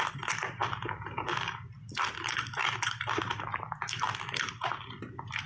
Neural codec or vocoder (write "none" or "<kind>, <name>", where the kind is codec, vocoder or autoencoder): vocoder, BigVGAN v2